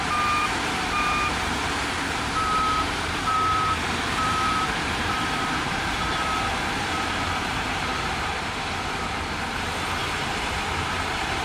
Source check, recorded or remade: remade